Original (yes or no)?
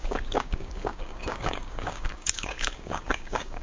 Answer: no